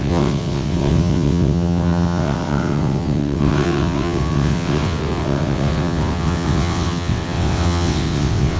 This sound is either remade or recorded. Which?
remade